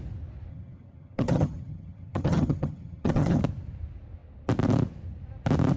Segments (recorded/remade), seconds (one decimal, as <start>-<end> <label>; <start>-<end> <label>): 0.0-0.5 recorded; 0.5-3.4 remade; 3.4-5.8 recorded